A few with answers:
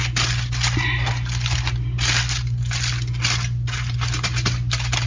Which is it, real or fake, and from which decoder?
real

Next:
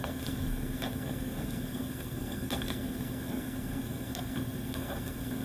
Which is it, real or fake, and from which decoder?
fake, codec, SNAC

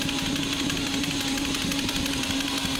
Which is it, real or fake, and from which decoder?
real